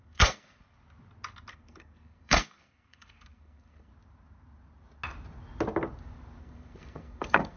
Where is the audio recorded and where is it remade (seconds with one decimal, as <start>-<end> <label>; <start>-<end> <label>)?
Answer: 0.0-0.6 remade; 0.6-1.5 recorded; 1.5-3.9 remade; 3.9-6.4 recorded; 6.4-7.6 remade